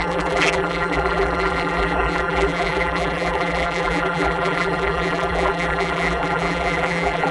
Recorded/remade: remade